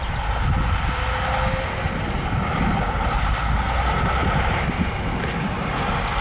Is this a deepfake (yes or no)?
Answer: no